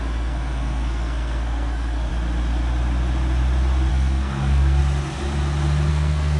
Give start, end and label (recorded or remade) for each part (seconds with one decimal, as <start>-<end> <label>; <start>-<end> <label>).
0.0-2.1 remade; 2.1-3.9 recorded; 3.9-4.8 remade; 4.8-5.9 recorded; 5.9-6.4 remade

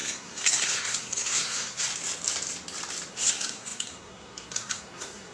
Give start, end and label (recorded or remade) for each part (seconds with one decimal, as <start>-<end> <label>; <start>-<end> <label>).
0.0-1.9 remade; 1.9-3.1 recorded; 3.1-5.3 remade

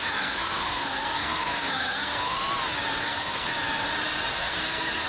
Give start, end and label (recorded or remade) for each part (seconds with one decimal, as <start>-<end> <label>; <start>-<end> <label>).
0.0-2.4 remade; 2.4-3.0 recorded; 3.0-3.5 remade; 3.5-4.4 recorded; 4.4-5.1 remade

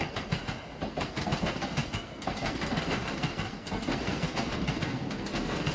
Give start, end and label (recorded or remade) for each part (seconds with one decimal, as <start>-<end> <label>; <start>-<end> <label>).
0.0-0.4 remade; 0.4-0.9 recorded; 0.9-5.7 remade

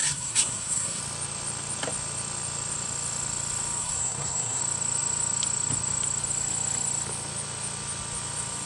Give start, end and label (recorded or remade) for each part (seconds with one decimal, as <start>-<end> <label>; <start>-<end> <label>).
0.0-1.0 remade; 1.0-3.8 recorded; 3.8-4.6 remade; 4.6-8.7 recorded